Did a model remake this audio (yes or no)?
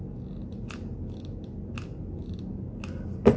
no